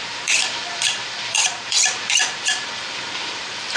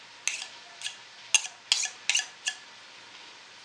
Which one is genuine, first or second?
second